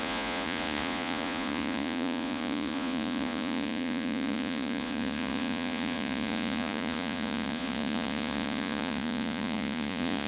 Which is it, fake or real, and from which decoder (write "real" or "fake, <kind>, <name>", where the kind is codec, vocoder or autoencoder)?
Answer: fake, vocoder, Vocos